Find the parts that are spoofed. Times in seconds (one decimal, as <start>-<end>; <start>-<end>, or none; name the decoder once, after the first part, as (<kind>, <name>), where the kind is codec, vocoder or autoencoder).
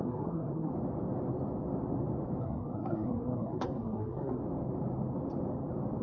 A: 0.0-0.7 (codec, SNAC); 2.4-4.4